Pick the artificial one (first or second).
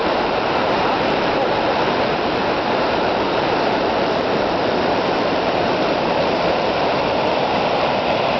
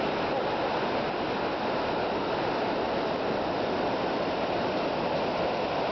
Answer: first